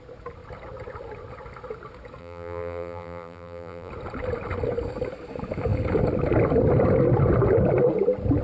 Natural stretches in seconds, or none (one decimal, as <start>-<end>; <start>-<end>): 0.0-2.2; 3.9-8.4